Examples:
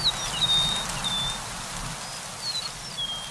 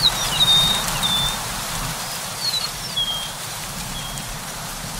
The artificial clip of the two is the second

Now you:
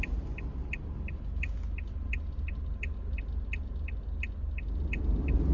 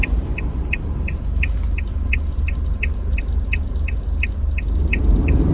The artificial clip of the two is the second